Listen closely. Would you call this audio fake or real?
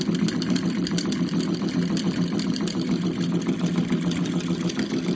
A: real